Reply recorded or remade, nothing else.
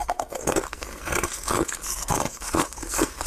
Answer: remade